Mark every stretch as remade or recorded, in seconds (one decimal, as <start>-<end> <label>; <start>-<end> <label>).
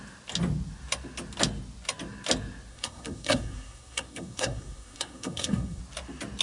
0.0-2.7 recorded; 2.7-5.8 remade; 5.8-6.4 recorded